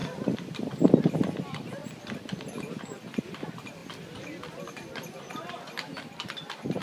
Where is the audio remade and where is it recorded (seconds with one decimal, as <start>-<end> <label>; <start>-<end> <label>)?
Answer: 0.0-0.7 remade; 0.7-3.8 recorded; 3.8-5.5 remade; 5.5-6.8 recorded

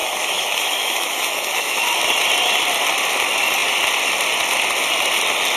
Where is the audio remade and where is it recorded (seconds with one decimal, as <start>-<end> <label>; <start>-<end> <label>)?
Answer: 0.0-1.8 remade; 1.8-5.6 recorded